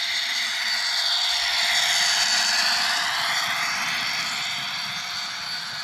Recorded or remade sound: recorded